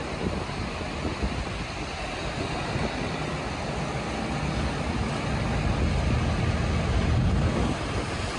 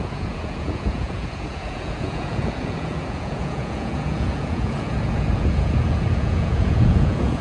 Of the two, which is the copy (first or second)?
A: second